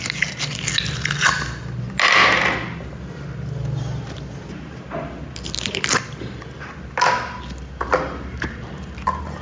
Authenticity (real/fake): real